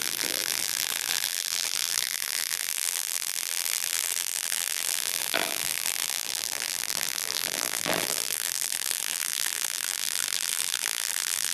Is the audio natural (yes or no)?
no